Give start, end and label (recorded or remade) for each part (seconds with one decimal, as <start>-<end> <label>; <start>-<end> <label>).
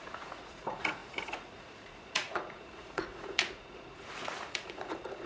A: 0.0-5.3 remade